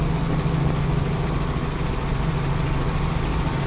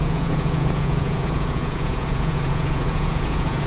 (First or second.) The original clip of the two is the first